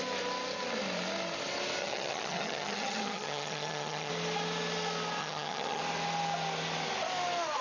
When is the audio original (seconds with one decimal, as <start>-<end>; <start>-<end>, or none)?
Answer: 0.0-1.8; 4.1-5.2; 5.8-7.6